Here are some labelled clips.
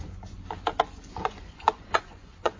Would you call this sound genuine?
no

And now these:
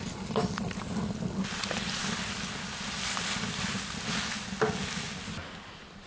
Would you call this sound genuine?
yes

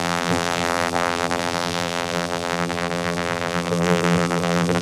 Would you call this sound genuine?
no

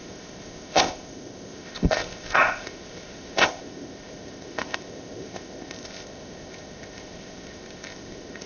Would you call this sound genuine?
no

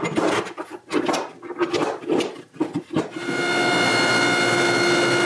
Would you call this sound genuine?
yes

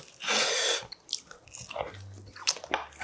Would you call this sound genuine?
yes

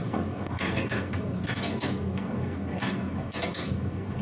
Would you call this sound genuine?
no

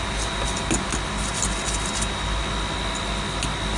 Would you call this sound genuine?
yes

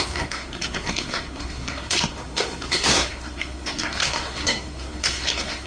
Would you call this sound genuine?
no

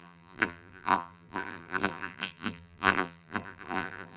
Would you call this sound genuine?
no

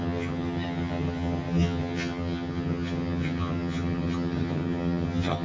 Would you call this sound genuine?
no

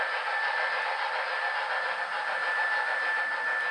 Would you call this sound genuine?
yes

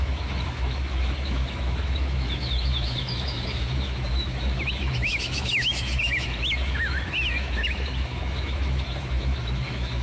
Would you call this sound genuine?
no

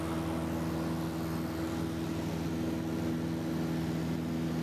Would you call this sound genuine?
yes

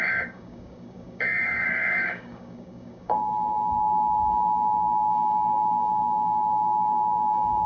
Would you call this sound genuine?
no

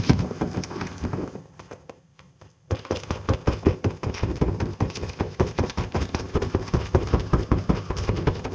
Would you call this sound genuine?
no